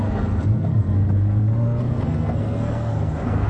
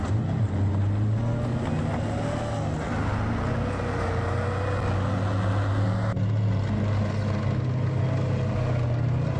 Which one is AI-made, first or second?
first